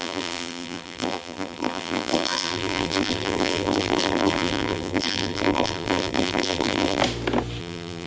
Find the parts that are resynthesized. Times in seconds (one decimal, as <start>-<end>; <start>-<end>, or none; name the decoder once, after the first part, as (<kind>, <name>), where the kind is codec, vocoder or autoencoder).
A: 0.0-7.0 (vocoder, BigVGAN v2); 7.6-8.1